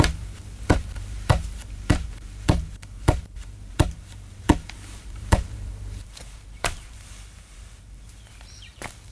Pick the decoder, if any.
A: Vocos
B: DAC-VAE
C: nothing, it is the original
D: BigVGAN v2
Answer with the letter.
D